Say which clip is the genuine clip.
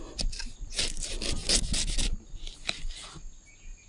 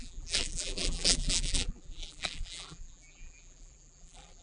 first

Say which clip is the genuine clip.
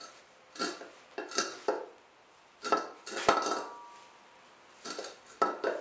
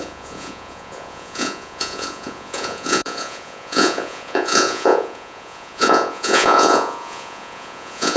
first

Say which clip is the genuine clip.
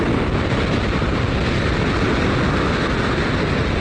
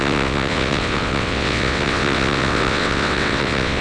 first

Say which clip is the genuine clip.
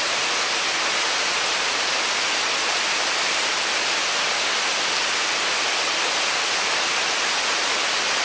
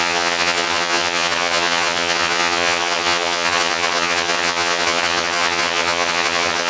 first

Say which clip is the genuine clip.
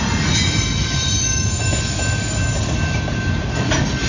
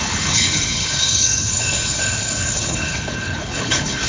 first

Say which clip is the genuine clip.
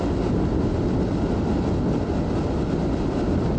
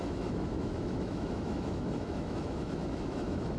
first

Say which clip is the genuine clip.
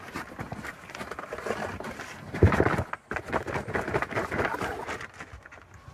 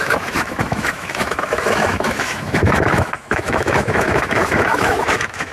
first